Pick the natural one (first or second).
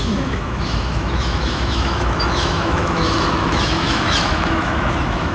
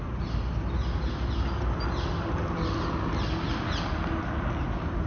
second